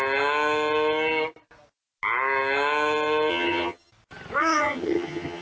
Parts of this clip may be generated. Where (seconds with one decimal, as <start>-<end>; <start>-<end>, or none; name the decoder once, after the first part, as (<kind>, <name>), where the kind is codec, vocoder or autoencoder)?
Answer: 3.3-3.9 (vocoder, HiFi-GAN); 4.4-5.4

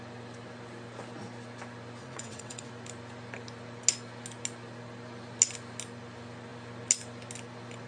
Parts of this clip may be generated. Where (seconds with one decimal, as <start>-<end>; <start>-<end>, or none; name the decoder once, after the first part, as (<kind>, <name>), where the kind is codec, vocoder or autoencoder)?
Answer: 2.0-2.7 (vocoder, WaveNeXt)

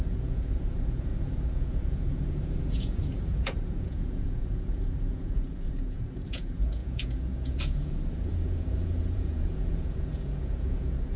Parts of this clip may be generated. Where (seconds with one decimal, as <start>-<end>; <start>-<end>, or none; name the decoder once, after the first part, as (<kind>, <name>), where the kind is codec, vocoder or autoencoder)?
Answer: 0.0-11.2 (vocoder, Vocos)